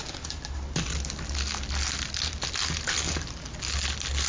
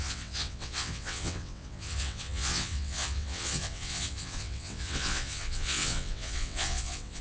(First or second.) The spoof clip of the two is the second